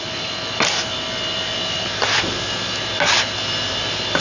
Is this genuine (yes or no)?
yes